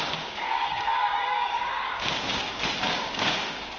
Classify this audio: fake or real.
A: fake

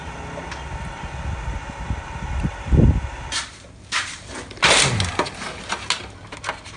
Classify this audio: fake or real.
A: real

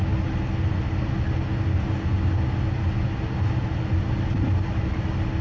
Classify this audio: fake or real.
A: real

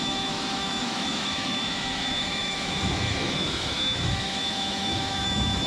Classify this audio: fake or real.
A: fake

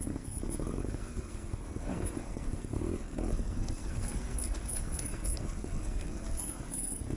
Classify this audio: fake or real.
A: fake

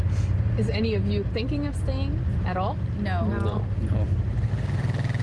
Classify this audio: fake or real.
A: real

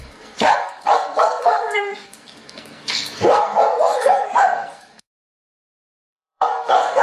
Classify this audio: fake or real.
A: fake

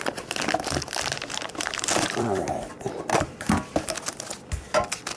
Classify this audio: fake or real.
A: fake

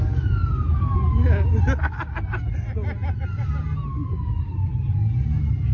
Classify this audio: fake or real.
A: real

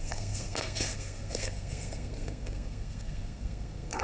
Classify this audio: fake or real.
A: fake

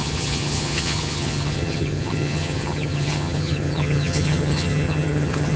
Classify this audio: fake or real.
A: fake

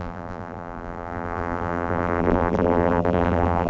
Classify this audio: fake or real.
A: fake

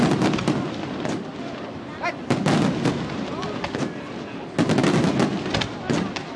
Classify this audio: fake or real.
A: real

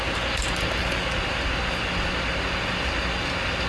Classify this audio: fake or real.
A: real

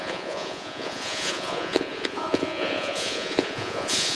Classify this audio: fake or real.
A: fake